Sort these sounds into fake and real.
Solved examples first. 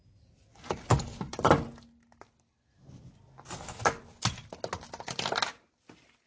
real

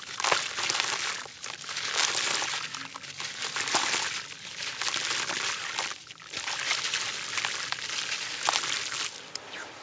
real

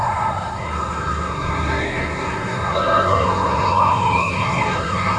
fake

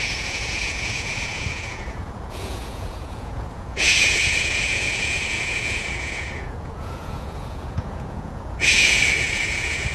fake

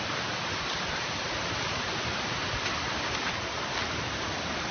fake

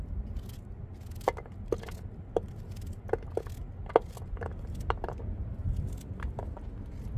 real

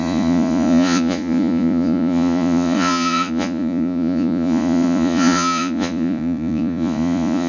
fake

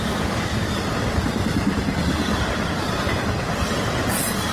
real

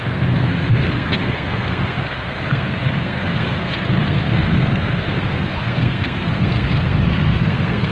fake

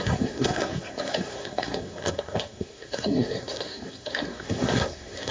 fake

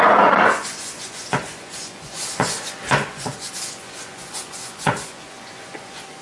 fake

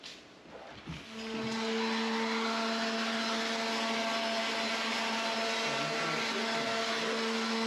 real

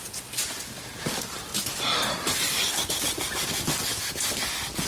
real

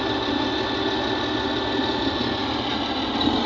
real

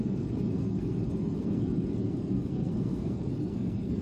fake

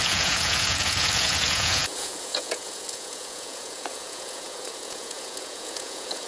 fake